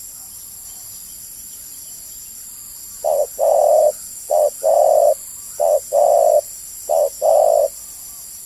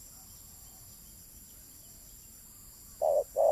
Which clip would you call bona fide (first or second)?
second